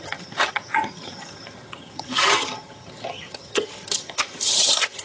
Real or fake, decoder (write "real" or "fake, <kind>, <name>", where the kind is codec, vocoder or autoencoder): fake, vocoder, HiFi-GAN